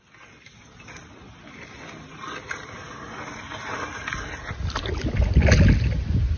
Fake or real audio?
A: real